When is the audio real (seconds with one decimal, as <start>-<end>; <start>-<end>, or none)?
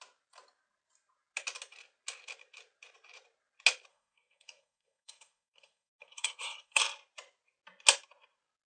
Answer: 0.0-3.9; 6.8-8.7